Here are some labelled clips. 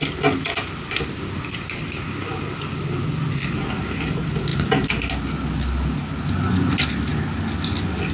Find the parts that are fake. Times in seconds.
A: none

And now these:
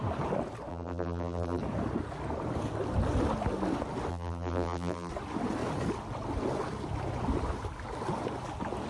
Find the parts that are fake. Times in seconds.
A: 0.7-1.6; 4.1-5.1

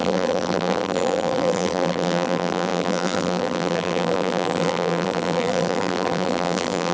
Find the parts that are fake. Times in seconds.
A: 0.0-6.9